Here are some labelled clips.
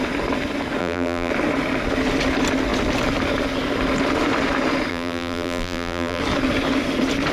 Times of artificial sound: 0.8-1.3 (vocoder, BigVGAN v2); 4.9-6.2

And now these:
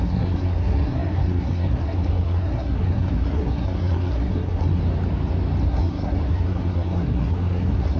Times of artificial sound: 0.0-4.8 (codec, SNAC); 5.6-8.0

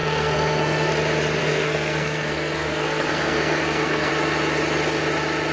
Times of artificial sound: 0.0-0.9 (codec, SNAC); 1.4-4.1

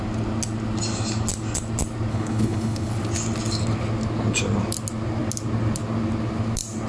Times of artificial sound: 2.1-2.9 (codec, HILCodec)

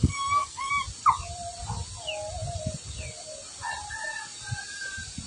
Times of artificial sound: 0.0-0.7 (codec, SNAC)

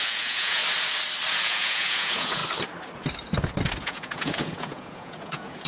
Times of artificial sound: 0.0-0.6 (vocoder, Vocos); 1.3-2.4; 3.8-5.7

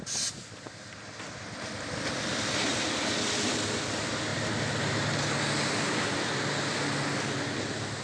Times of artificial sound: none

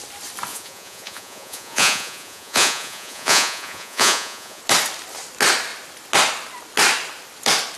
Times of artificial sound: 0.5-4.6 (vocoder, Vocos)